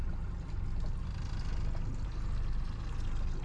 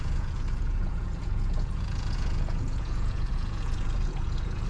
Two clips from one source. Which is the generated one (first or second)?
second